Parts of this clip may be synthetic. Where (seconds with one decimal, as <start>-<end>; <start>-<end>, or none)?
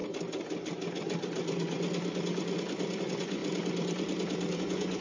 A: 3.0-3.4; 4.6-5.0